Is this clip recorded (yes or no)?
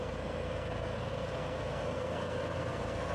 no